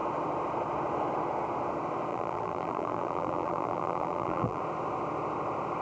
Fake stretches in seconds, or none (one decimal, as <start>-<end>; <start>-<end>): 2.1-4.6